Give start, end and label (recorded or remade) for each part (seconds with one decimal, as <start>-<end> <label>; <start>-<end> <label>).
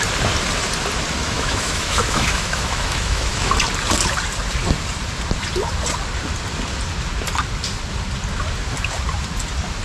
0.0-1.2 recorded; 1.2-3.5 remade; 3.5-9.8 recorded